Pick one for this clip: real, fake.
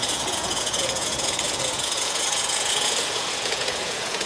fake